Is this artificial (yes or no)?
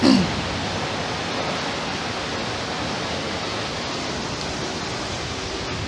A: no